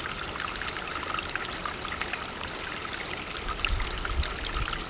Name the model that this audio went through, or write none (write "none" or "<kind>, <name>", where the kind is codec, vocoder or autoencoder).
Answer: none